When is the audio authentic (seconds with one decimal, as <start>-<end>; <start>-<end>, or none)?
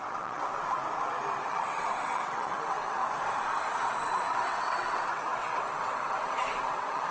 0.8-1.4; 3.0-4.3